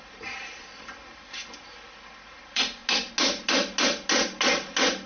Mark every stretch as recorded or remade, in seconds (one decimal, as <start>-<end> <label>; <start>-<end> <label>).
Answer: 0.0-2.8 remade; 2.8-5.1 recorded